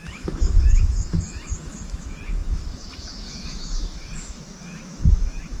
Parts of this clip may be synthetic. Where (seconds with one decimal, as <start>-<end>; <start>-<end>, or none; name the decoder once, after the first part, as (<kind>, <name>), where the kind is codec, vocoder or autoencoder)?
0.0-5.6 (autoencoder, DAC-VAE)